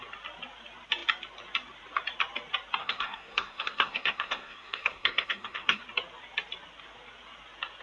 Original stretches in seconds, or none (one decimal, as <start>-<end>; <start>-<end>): 0.0-2.8; 5.8-7.8